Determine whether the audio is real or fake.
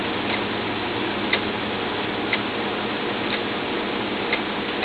real